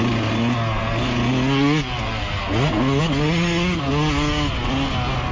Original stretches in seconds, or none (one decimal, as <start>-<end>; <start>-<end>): 0.0-5.3